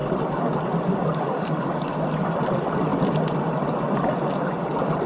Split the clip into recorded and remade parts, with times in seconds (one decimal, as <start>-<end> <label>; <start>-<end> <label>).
0.0-0.6 remade; 0.6-5.1 recorded